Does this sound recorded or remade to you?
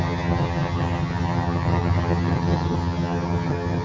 remade